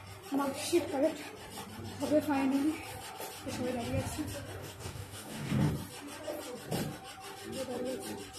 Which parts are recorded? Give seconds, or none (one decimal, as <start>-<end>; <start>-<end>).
0.0-4.6; 5.7-8.4